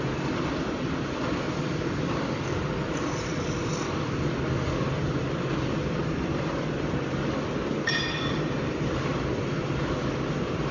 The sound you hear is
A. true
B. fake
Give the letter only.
B